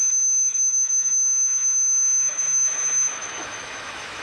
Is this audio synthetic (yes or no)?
yes